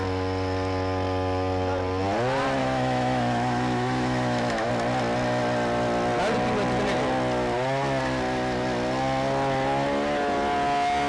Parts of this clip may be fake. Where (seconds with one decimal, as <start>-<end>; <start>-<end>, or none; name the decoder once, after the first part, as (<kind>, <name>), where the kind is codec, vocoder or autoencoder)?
2.6-4.7 (autoencoder, DAC-VAE)